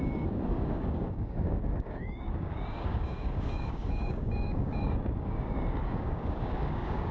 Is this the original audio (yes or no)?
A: no